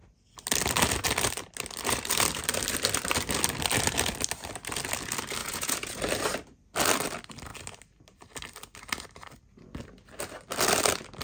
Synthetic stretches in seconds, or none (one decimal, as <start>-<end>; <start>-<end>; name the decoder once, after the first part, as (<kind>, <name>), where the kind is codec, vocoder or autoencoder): 5.4-6.0 (vocoder, Vocos)

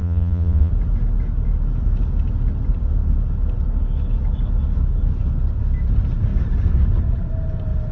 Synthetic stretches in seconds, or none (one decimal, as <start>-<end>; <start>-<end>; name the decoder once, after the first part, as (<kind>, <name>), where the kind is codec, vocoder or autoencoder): 0.0-0.7 (vocoder, Vocos)

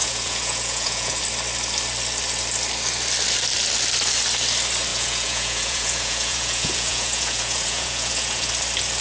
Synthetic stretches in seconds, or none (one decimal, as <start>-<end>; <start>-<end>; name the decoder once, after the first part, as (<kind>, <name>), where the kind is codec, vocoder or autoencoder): 0.0-1.2 (vocoder, Vocos); 4.9-8.5

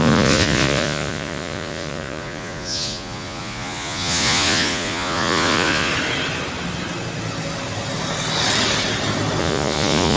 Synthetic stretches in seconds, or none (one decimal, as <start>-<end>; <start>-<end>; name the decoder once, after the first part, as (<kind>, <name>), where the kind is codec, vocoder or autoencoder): 0.0-5.9 (vocoder, Vocos); 9.4-10.2